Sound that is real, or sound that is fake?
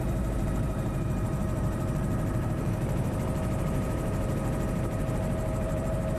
fake